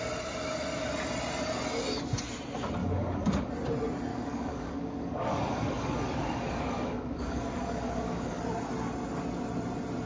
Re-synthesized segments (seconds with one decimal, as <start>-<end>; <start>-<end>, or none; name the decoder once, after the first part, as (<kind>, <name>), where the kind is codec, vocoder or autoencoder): 2.8-3.5 (codec, DAC); 4.1-8.4